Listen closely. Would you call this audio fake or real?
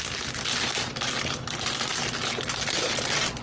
real